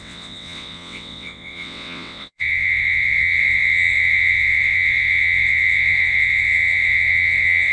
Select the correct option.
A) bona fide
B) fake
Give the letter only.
B